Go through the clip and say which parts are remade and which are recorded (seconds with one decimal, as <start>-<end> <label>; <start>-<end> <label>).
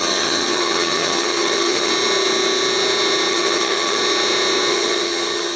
0.0-1.9 remade; 1.9-3.3 recorded; 3.3-4.0 remade; 4.0-4.7 recorded; 4.7-5.6 remade